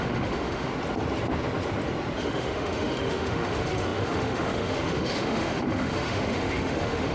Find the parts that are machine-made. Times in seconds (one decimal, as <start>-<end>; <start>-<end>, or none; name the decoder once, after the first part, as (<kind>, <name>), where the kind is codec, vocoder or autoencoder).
0.0-0.7 (autoencoder, DAC-VAE); 2.2-7.1